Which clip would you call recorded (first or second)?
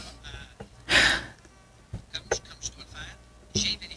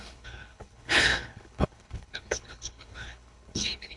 first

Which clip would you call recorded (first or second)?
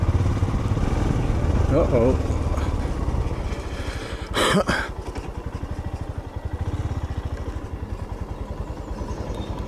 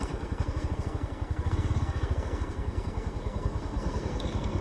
first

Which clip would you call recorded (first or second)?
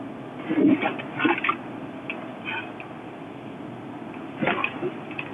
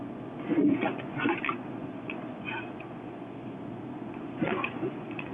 first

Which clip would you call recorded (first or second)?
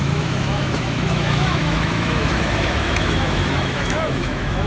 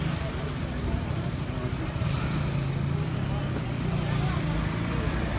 second